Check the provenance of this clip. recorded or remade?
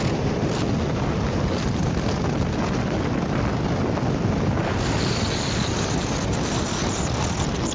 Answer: recorded